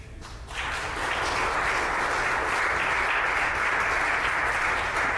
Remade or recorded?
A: recorded